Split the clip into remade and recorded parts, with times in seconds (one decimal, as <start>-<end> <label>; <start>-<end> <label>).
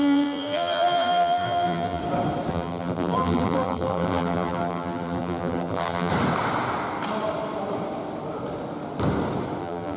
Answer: 0.0-2.0 remade; 2.0-2.5 recorded; 2.5-6.1 remade; 6.1-9.6 recorded; 9.6-10.0 remade